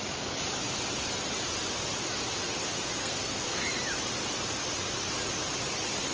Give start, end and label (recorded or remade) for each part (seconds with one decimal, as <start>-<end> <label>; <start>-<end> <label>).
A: 0.0-3.0 recorded; 3.0-3.6 remade; 3.6-6.1 recorded